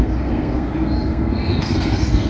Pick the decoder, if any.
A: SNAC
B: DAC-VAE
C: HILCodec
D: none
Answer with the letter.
A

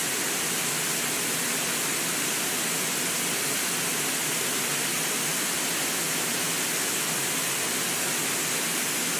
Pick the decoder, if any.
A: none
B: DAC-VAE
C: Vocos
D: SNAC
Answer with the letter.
A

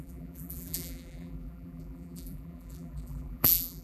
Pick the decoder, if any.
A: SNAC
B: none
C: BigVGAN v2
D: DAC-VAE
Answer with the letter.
C